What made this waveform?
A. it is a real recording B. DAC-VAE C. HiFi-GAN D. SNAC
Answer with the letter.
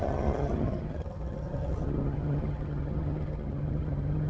C